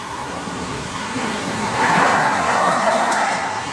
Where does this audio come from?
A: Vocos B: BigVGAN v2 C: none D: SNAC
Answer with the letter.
D